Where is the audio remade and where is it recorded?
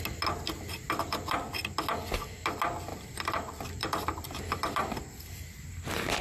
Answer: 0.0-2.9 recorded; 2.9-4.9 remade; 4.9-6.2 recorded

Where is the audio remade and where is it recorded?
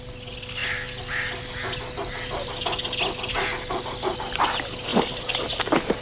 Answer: 0.0-4.9 recorded; 4.9-6.0 remade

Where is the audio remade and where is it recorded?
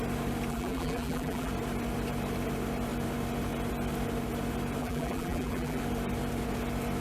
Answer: 0.0-0.5 recorded; 0.5-1.5 remade; 1.5-4.8 recorded; 4.8-5.8 remade; 5.8-7.0 recorded